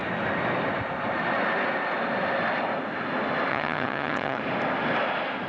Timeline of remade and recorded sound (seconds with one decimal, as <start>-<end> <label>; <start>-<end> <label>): 0.0-3.5 recorded; 3.5-4.4 remade; 4.4-5.5 recorded